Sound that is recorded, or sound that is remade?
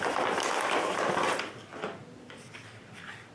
recorded